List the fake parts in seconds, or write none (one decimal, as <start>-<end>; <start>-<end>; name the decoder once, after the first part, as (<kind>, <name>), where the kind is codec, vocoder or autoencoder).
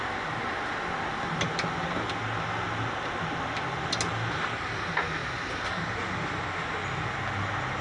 none